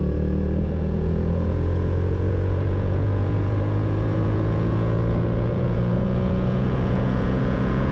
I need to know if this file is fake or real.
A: fake